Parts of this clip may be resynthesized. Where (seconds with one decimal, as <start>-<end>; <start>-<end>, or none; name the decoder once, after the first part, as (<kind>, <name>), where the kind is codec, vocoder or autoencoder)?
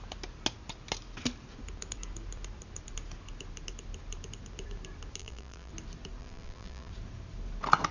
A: 5.2-5.7 (vocoder, BigVGAN v2); 6.2-6.9